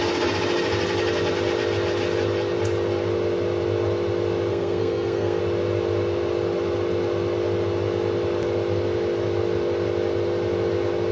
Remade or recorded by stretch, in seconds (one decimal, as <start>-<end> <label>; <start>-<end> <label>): 0.0-4.5 recorded; 4.5-5.4 remade; 5.4-11.1 recorded